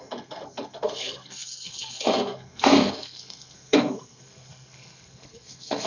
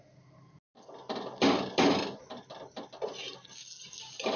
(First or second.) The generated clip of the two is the first